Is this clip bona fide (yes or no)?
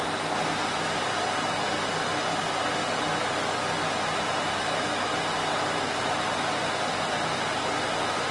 yes